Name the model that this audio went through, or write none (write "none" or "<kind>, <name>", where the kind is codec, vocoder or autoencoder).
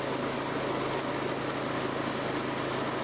none